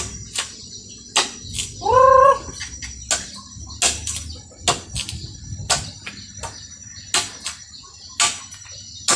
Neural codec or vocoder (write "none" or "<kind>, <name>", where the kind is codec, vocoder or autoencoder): none